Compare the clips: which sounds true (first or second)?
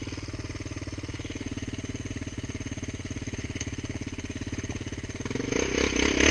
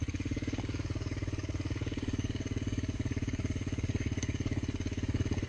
first